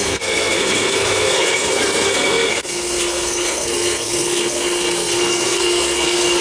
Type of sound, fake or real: fake